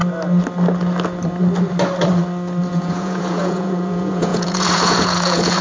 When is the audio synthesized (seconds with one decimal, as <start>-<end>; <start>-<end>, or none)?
2.7-5.6